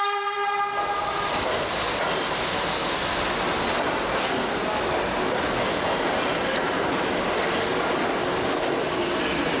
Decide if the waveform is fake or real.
real